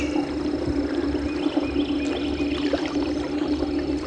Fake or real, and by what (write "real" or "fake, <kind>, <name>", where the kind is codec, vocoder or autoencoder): real